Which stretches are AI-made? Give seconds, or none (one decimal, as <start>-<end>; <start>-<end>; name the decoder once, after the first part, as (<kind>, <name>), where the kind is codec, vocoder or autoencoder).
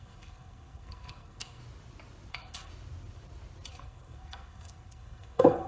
0.0-1.6 (codec, SNAC); 2.3-2.7; 3.7-5.7